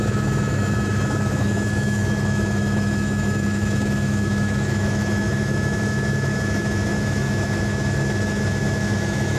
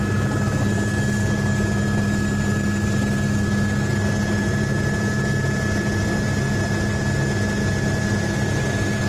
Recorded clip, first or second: second